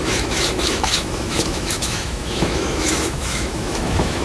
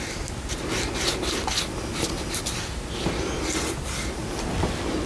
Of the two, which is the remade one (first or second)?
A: first